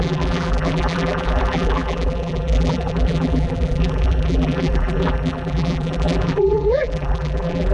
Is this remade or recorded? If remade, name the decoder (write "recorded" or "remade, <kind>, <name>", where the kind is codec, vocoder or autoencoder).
remade, vocoder, BigVGAN v2